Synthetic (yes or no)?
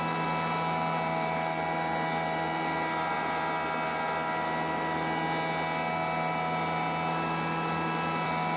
no